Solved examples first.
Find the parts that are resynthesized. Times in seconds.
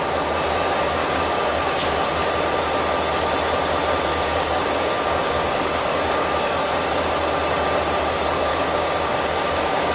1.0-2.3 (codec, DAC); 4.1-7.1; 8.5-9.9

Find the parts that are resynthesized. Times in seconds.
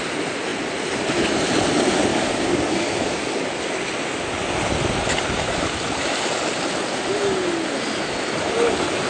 2.1-3.5 (codec, DAC)